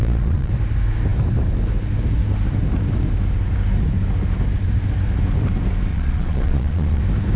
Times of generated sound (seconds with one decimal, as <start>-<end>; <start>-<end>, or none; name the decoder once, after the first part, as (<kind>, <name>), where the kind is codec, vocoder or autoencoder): 0.0-0.5 (vocoder, Vocos); 5.9-7.0